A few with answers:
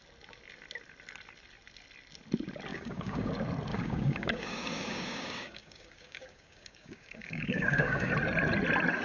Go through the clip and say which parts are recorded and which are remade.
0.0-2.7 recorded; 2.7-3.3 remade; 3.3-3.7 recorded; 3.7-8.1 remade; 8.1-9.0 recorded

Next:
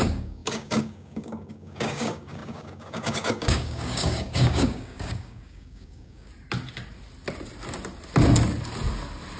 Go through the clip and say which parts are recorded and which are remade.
0.0-6.3 remade; 6.3-9.4 recorded

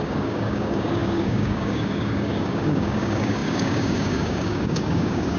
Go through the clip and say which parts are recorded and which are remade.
0.0-5.4 remade

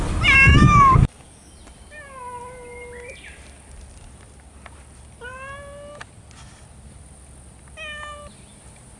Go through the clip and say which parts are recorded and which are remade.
0.0-0.6 recorded; 0.6-1.5 remade; 1.5-9.0 recorded

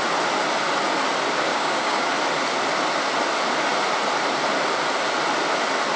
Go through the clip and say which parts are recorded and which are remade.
0.0-1.5 recorded; 1.5-2.1 remade; 2.1-6.0 recorded

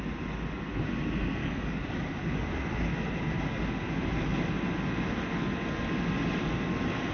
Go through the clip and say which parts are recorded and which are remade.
0.0-1.4 recorded; 1.4-1.9 remade; 1.9-7.1 recorded